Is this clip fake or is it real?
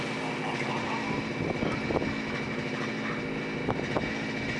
real